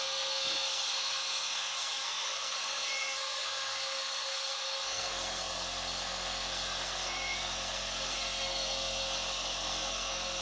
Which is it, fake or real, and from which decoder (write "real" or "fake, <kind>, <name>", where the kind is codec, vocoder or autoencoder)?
fake, codec, SNAC